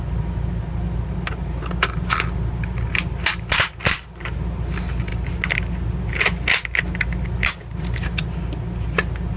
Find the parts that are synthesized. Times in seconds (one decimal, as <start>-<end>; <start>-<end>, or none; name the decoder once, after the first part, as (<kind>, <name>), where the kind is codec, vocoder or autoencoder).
none